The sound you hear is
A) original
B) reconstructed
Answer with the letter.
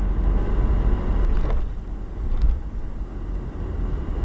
A